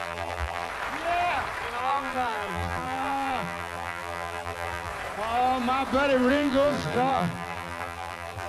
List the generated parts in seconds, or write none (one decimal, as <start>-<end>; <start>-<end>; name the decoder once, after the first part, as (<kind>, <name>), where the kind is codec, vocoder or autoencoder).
0.0-0.7 (vocoder, BigVGAN v2); 1.8-4.9; 6.3-8.5